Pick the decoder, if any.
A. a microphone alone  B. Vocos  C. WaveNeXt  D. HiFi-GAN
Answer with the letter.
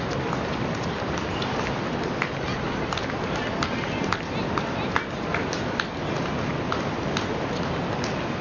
A